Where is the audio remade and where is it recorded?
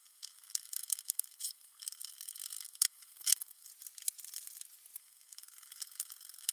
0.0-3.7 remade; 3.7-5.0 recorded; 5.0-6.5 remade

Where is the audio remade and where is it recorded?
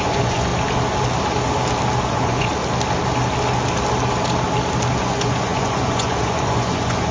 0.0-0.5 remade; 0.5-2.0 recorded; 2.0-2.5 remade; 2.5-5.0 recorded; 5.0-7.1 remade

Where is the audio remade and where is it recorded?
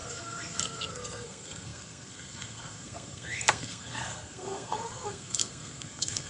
0.0-6.3 remade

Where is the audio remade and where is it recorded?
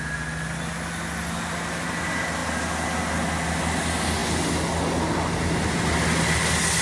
0.0-6.8 recorded